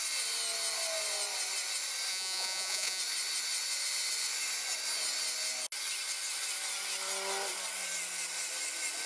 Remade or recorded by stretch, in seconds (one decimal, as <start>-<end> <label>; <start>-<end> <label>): 0.0-2.1 recorded; 2.1-3.0 remade; 3.0-9.1 recorded